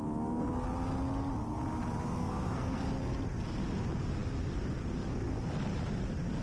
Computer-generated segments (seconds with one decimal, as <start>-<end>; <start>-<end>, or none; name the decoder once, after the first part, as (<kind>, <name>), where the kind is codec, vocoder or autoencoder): 2.2-2.8 (codec, SNAC)